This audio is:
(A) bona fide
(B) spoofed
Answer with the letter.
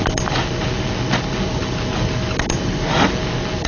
A